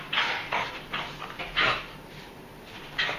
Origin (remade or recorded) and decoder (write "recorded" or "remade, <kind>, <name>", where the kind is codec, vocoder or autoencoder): recorded